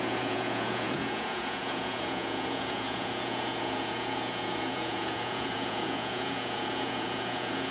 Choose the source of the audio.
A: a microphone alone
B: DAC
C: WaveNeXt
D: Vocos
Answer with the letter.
D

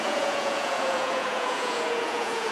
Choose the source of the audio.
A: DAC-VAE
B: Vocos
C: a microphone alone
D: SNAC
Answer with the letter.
B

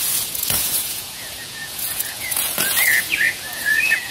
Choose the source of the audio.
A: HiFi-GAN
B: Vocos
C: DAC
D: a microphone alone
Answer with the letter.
B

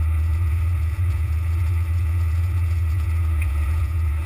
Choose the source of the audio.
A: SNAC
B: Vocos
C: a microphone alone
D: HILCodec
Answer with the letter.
B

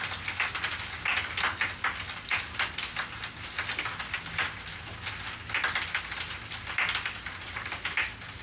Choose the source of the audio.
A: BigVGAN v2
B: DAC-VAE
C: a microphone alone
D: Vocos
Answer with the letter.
C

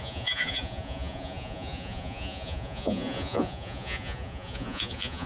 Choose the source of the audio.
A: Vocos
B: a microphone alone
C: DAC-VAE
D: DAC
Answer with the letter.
A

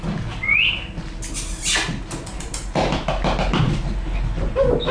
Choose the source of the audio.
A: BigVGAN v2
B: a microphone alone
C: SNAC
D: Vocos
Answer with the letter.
B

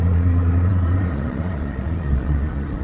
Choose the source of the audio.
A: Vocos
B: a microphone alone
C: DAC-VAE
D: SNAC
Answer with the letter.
A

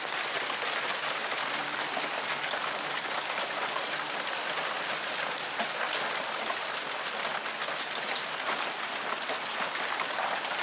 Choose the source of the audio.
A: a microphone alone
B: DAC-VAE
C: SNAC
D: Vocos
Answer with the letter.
A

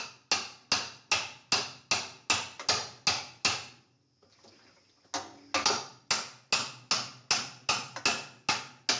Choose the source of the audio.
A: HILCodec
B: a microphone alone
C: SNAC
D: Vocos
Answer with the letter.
B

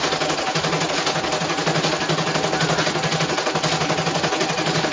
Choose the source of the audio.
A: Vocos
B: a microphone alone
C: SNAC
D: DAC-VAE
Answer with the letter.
B